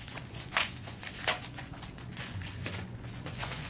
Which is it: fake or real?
fake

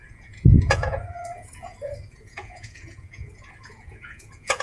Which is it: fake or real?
fake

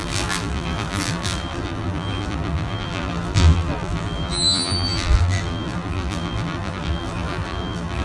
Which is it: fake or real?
fake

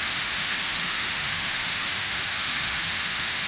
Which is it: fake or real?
fake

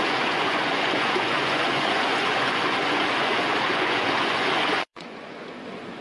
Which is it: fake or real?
fake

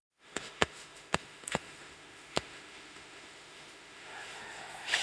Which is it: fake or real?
fake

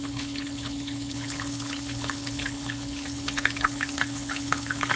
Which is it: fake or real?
fake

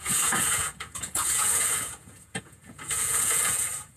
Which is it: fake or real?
fake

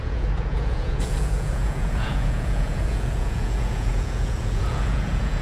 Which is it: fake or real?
fake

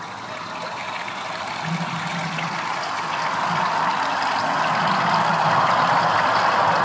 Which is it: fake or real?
real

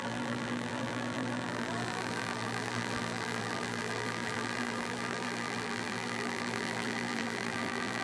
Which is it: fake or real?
fake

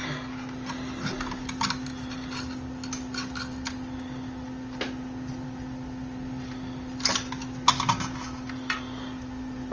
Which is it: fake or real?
real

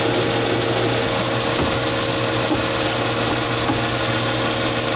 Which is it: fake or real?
real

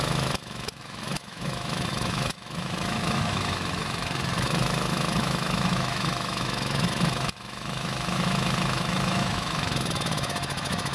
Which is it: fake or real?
fake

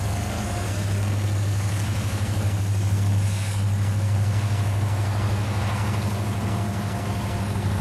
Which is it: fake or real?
fake